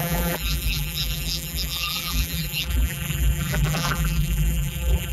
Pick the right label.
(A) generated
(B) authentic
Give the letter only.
A